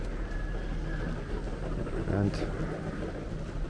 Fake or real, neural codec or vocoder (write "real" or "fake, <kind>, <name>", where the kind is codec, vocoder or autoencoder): real